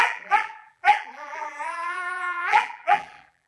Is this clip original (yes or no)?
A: no